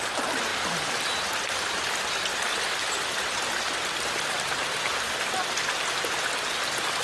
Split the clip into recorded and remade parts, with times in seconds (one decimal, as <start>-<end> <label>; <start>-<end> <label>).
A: 0.0-2.3 recorded; 2.3-5.6 remade; 5.6-7.0 recorded